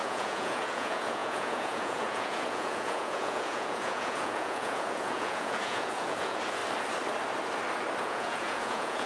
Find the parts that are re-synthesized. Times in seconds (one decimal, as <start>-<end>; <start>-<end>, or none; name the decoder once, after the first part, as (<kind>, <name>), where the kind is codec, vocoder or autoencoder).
0.0-6.6 (vocoder, Vocos); 8.0-9.1

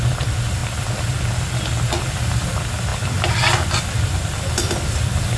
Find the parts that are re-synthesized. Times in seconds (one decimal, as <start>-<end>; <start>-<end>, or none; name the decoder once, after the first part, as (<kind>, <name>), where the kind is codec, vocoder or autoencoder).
none

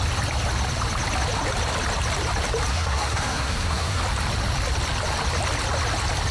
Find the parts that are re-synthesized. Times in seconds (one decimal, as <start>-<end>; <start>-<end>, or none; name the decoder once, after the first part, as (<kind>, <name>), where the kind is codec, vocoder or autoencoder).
2.7-4.0 (codec, SNAC)

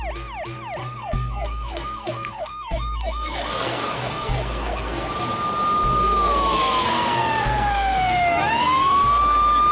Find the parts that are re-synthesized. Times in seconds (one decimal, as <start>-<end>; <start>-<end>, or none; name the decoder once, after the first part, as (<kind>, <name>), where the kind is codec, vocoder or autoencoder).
0.8-5.1 (codec, SNAC); 5.9-9.2

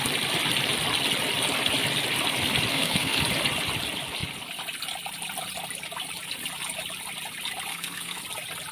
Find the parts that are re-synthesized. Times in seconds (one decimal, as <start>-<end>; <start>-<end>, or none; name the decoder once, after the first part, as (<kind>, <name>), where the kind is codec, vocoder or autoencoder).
2.7-3.2 (codec, SNAC); 7.7-8.2

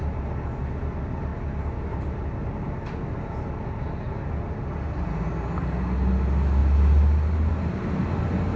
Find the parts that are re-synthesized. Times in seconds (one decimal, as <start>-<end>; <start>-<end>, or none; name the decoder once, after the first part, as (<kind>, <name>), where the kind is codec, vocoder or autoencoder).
none

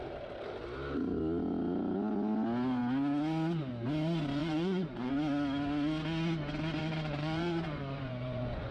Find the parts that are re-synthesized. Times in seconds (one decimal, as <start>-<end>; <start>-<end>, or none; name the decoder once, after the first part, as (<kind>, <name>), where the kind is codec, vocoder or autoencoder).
4.4-5.1 (vocoder, Vocos); 6.8-8.7

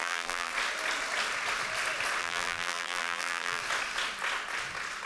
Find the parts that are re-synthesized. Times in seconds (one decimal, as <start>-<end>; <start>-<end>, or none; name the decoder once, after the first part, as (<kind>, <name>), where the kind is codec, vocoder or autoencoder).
0.0-0.5 (vocoder, BigVGAN v2); 2.2-3.6